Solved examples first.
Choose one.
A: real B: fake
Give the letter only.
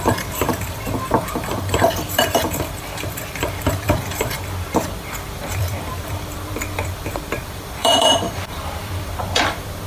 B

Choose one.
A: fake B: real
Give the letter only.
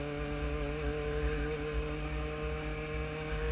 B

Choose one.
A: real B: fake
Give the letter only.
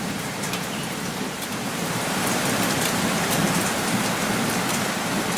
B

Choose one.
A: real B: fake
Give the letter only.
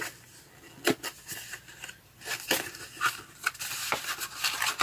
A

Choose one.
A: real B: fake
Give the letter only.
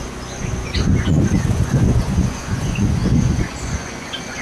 B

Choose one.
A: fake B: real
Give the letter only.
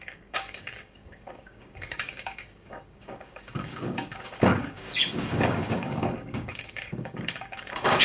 A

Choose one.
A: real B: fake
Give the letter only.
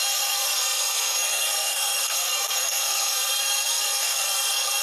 B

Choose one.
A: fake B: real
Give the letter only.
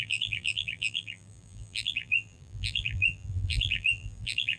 A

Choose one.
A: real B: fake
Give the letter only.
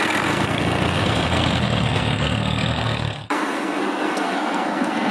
B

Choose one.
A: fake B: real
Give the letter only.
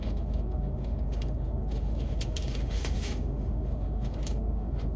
A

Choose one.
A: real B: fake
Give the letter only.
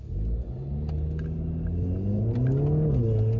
A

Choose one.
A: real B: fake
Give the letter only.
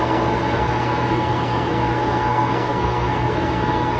B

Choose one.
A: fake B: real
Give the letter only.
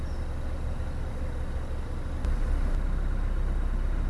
B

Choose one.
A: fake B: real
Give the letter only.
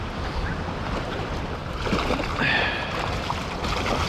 B